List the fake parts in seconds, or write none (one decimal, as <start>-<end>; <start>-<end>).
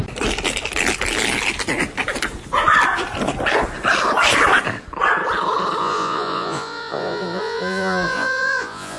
5.8-9.0